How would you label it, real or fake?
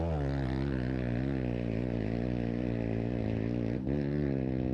real